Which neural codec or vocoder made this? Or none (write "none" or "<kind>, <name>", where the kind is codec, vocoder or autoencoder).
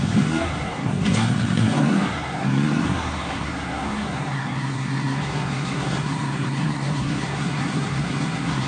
codec, SNAC